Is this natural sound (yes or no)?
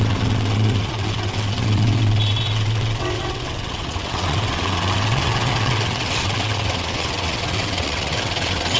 no